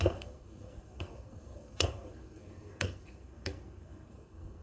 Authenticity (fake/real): fake